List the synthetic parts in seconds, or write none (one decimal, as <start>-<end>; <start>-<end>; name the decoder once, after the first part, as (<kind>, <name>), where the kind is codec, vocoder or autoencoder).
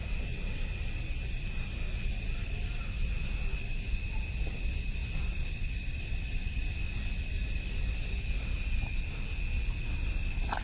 none